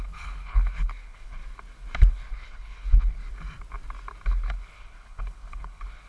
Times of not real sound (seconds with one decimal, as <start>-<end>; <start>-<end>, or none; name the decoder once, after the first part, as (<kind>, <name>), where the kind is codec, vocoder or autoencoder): 0.0-1.4 (codec, HILCodec); 2.1-3.2; 4.3-6.1